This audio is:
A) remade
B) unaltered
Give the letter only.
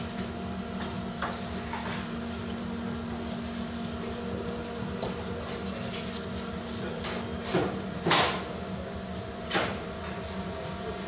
B